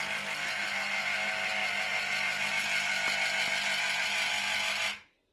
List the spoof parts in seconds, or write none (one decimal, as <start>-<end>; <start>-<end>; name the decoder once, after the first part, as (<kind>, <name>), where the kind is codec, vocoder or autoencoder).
none